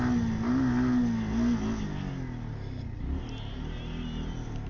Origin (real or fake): real